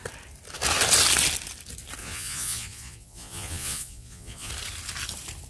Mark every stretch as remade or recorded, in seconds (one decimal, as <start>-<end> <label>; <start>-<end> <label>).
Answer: 0.0-2.0 recorded; 2.0-4.5 remade; 4.5-5.5 recorded